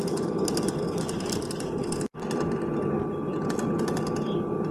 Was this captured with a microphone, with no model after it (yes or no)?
yes